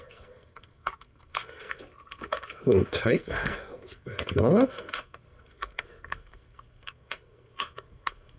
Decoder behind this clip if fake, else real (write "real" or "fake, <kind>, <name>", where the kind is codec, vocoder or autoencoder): fake, codec, SNAC